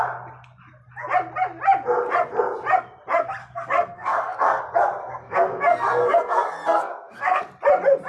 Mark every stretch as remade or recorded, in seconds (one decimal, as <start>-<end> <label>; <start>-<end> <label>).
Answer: 0.0-3.4 recorded; 3.4-4.6 remade; 4.6-5.0 recorded; 5.0-7.4 remade; 7.4-8.1 recorded